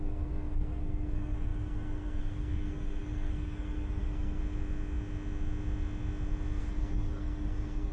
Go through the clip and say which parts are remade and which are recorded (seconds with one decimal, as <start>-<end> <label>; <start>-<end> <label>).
0.0-4.4 remade; 4.4-6.6 recorded; 6.6-7.9 remade